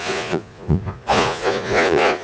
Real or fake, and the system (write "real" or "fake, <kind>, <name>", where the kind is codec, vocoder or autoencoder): fake, vocoder, Vocos